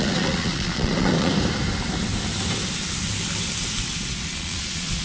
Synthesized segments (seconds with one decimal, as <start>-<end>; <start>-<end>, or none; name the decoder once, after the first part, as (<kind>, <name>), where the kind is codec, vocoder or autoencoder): 0.0-1.3 (vocoder, Vocos); 4.3-5.0